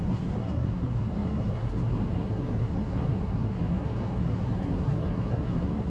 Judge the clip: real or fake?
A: fake